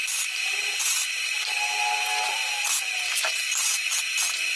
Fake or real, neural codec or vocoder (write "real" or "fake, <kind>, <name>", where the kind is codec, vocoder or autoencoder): real